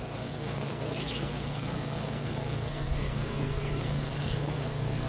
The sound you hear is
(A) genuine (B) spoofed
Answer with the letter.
B